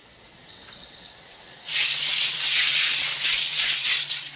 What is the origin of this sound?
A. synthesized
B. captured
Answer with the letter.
A